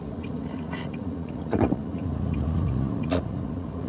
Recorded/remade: remade